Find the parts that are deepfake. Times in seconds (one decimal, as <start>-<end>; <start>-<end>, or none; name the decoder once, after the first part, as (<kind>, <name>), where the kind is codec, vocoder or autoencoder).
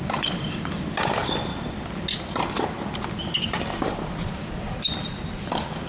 none